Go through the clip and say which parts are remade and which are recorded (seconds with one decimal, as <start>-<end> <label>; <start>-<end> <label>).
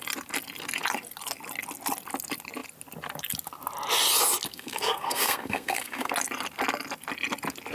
0.0-4.5 recorded; 4.5-6.1 remade; 6.1-7.7 recorded